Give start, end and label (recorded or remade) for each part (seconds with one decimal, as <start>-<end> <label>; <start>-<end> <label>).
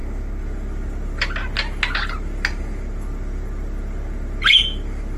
0.0-5.2 recorded